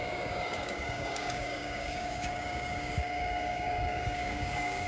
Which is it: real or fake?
fake